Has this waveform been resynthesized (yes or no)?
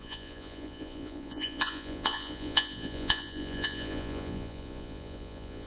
yes